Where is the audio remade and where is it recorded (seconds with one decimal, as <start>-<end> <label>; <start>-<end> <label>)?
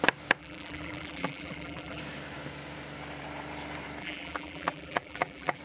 0.0-0.4 recorded; 0.4-2.0 remade; 2.0-4.0 recorded; 4.0-5.6 remade